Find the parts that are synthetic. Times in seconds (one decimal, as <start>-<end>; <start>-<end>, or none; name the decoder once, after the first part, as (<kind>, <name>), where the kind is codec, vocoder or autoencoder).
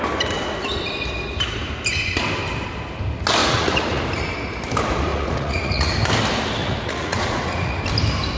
3.4-4.0 (vocoder, Vocos); 5.1-5.9; 6.6-7.8